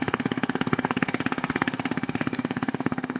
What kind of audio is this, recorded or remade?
remade